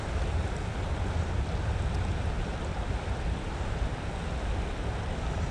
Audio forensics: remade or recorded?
recorded